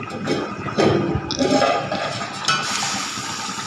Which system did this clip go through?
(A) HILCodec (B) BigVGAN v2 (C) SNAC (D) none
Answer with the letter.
D